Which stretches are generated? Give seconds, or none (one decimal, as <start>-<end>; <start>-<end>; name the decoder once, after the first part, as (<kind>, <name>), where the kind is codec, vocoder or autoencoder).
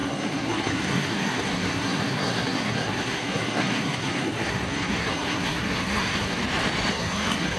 0.0-6.4 (codec, SNAC); 6.9-7.6